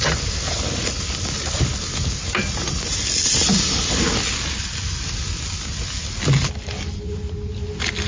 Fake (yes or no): no